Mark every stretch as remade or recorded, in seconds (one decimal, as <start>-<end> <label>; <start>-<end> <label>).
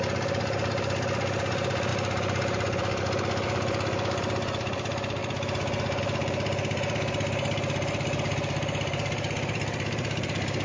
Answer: 0.0-5.2 remade; 5.2-6.0 recorded; 6.0-10.6 remade